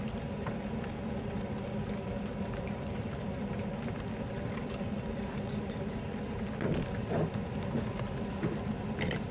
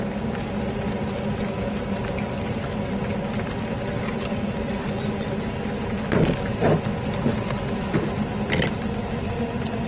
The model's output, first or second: first